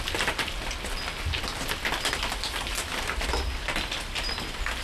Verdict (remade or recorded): recorded